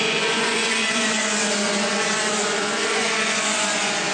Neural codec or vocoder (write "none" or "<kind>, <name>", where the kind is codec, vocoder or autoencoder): vocoder, Vocos